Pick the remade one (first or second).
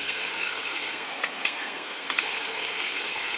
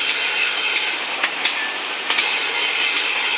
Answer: first